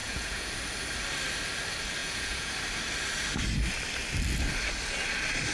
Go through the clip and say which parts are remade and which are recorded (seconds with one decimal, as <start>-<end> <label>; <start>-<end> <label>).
0.0-0.5 remade; 0.5-2.0 recorded; 2.0-2.5 remade; 2.5-5.5 recorded